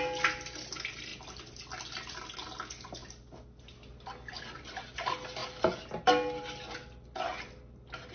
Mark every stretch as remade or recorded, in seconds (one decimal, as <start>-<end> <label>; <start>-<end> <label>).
0.0-8.1 recorded